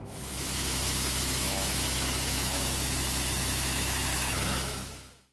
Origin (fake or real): fake